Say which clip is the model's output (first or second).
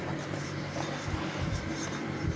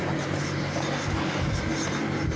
first